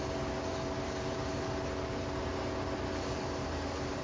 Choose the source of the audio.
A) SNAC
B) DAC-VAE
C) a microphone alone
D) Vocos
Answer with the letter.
C